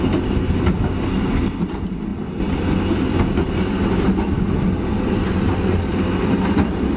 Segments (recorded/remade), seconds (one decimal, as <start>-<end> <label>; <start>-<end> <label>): 0.0-7.0 recorded

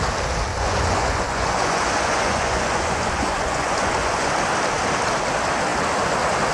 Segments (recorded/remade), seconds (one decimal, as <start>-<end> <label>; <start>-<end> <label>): 0.0-0.5 recorded; 0.5-4.3 remade; 4.3-6.5 recorded

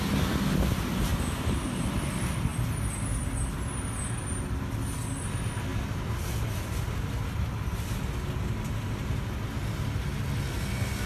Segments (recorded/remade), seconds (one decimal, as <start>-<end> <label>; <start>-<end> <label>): 0.0-11.1 recorded

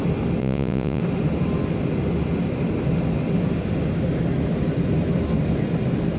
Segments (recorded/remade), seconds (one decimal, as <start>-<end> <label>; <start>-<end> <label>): 0.0-0.4 recorded; 0.4-1.0 remade; 1.0-6.2 recorded

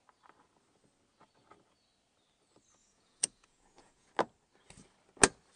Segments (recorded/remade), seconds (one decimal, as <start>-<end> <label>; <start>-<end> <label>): 0.0-2.8 recorded; 2.8-4.1 remade; 4.1-5.6 recorded

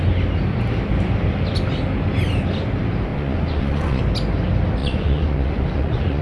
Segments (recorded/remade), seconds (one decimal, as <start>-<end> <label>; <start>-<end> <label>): 0.0-3.1 recorded; 3.1-4.0 remade; 4.0-4.8 recorded; 4.8-6.2 remade

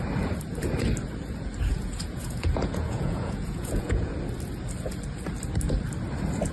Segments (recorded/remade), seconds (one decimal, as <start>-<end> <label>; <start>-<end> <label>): 0.0-1.7 recorded; 1.7-4.1 remade; 4.1-6.5 recorded

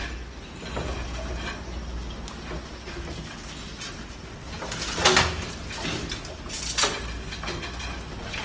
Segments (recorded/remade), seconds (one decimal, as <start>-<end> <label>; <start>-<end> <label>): 0.0-8.4 recorded